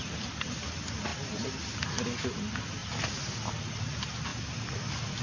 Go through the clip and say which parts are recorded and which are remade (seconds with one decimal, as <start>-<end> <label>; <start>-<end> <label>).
0.0-5.2 recorded

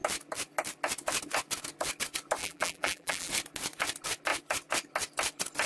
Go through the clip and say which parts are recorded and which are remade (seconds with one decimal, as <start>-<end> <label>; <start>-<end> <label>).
0.0-2.4 recorded; 2.4-3.3 remade; 3.3-5.7 recorded

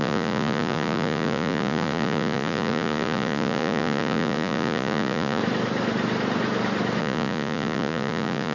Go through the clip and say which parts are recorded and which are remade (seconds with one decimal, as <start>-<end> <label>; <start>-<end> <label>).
0.0-5.4 remade; 5.4-7.0 recorded; 7.0-8.5 remade

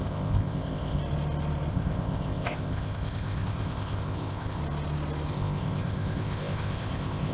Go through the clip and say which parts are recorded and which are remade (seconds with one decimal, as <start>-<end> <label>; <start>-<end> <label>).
0.0-1.0 remade; 1.0-1.7 recorded; 1.7-4.6 remade; 4.6-5.3 recorded; 5.3-7.3 remade